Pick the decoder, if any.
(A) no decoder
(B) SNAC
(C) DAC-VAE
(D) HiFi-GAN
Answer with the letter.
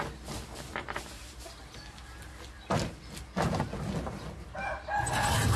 A